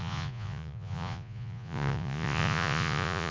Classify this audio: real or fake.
fake